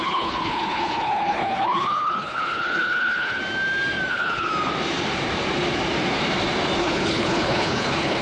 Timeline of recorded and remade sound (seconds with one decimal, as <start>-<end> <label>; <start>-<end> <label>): 0.0-3.4 remade; 3.4-4.1 recorded; 4.1-4.5 remade; 4.5-6.8 recorded; 6.8-8.2 remade